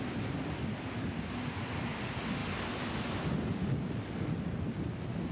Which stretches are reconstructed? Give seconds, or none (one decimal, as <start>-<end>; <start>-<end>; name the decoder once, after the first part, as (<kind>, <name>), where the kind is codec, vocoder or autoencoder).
none